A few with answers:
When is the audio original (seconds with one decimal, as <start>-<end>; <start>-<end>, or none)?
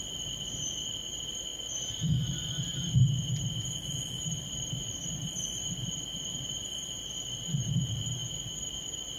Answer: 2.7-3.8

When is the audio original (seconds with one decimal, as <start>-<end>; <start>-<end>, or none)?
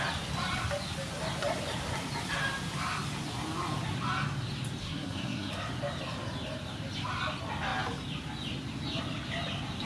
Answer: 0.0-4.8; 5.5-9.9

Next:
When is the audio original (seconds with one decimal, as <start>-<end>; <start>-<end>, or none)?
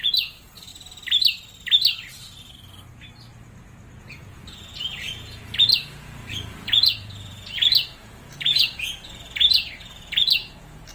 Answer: 0.7-4.0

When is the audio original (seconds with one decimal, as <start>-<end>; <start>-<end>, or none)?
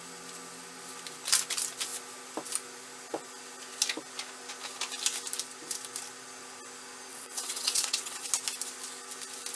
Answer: 0.0-7.1; 8.3-9.6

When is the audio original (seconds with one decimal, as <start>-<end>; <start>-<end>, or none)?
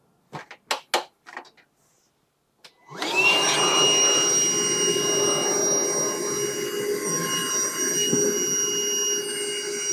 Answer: 0.0-9.9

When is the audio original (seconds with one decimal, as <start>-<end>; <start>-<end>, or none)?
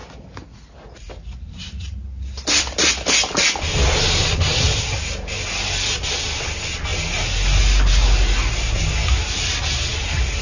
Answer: 0.0-10.4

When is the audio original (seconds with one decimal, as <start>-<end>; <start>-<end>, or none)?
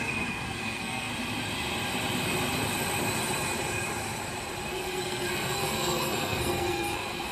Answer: 1.1-4.7